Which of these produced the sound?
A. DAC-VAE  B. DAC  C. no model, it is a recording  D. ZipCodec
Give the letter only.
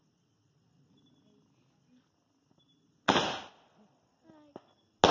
C